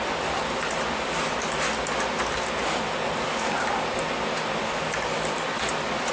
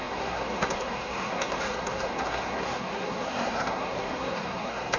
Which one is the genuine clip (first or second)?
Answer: first